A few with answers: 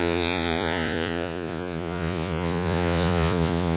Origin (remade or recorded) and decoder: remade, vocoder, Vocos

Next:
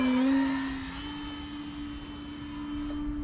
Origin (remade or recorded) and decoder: recorded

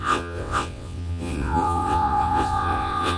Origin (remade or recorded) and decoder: remade, vocoder, WaveNeXt